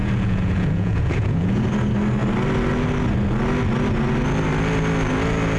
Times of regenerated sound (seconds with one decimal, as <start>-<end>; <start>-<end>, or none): 0.0-1.7